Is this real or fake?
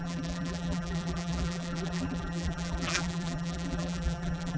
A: fake